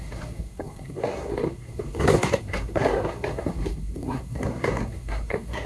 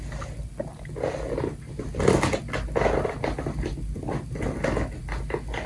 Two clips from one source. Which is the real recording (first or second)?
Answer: second